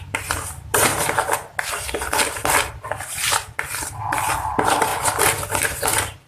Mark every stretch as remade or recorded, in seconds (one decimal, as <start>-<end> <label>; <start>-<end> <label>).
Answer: 0.0-0.9 remade; 0.9-2.1 recorded; 2.1-6.3 remade